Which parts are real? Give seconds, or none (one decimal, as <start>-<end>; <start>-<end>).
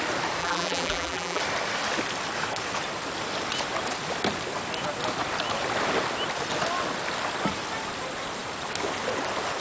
0.0-0.4; 1.4-9.6